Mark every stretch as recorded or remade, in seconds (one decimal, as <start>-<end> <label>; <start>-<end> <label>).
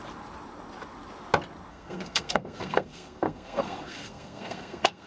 0.0-1.7 recorded; 1.7-5.1 remade